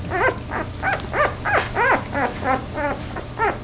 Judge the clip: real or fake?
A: real